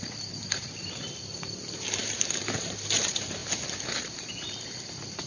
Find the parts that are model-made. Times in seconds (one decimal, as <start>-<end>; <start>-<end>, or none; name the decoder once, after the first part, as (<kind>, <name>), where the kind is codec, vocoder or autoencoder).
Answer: 0.0-3.4 (vocoder, BigVGAN v2); 4.0-5.3